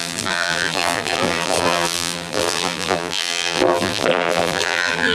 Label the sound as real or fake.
fake